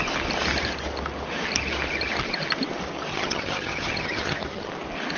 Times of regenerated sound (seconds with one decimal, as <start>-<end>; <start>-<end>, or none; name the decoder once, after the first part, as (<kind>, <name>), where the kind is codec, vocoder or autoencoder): 3.1-4.7 (vocoder, HiFi-GAN)